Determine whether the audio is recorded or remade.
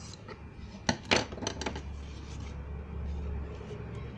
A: recorded